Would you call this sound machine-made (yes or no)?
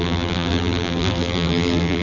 yes